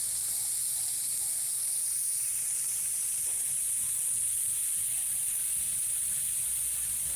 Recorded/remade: recorded